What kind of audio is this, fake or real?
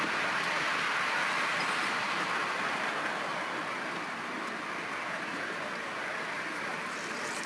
real